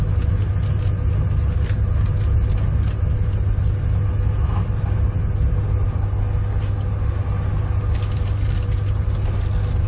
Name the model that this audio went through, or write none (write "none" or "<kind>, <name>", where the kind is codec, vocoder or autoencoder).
none